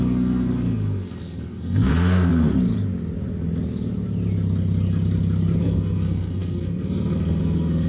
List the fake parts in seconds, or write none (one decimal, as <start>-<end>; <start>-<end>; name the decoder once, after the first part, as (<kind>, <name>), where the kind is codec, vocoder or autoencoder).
0.0-2.3 (codec, SNAC); 5.6-7.9

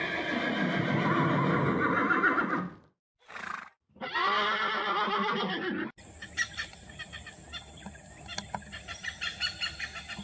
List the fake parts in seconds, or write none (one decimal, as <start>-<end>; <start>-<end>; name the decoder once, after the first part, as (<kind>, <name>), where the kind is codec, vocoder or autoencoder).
none

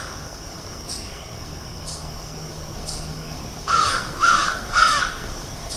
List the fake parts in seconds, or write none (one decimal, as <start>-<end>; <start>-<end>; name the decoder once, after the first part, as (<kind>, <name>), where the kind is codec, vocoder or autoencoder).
0.0-5.8 (codec, SNAC)

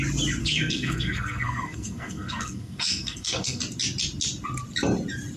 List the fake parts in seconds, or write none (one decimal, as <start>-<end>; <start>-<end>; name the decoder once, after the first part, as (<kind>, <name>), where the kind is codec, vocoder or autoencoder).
0.4-3.6 (codec, SNAC)

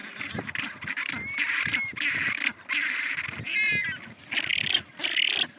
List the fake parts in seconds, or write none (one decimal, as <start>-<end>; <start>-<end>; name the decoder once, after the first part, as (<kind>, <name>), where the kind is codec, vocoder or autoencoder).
none